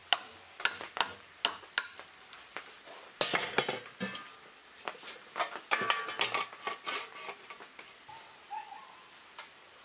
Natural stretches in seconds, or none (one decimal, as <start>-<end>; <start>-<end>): 0.0-9.8